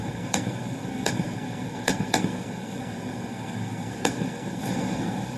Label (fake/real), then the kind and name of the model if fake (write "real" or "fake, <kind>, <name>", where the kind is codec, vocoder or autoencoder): fake, codec, SNAC